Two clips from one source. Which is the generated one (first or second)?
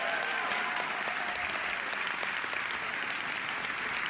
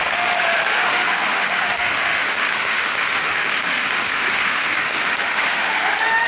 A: second